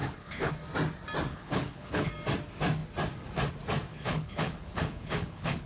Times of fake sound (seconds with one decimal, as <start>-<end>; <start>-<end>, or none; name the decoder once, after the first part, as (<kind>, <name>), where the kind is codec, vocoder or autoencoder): 0.0-0.5 (codec, HILCodec); 1.3-2.1; 3.9-5.7